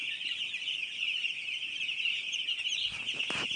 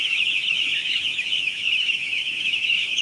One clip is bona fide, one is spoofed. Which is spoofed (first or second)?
second